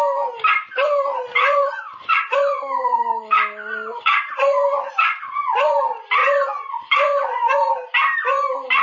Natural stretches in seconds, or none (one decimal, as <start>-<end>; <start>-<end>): 0.0-1.3; 5.8-6.2; 7.7-8.8